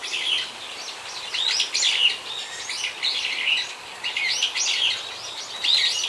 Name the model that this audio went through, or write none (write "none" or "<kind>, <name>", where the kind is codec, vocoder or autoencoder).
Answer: none